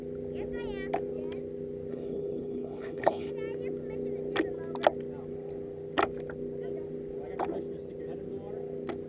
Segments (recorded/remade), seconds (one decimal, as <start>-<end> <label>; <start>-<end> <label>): 0.0-1.9 recorded; 1.9-3.3 remade; 3.3-9.1 recorded